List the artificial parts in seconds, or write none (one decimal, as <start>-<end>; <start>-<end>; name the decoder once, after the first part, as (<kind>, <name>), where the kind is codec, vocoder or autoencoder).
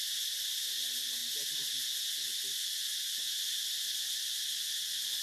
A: none